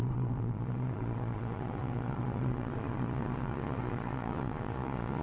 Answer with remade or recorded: remade